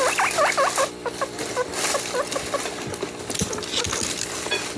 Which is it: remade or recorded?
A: recorded